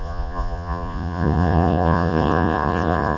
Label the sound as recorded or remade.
remade